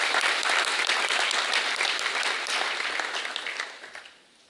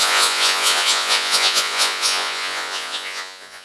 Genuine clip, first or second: first